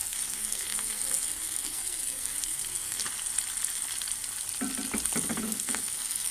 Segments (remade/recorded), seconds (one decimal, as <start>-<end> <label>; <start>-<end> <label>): 0.0-3.0 remade; 3.0-5.3 recorded; 5.3-6.3 remade